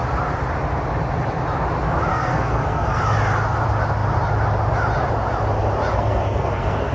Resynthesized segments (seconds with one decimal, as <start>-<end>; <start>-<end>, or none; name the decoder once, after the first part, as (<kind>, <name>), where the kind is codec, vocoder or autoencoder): 2.1-3.0 (codec, SNAC); 5.9-6.9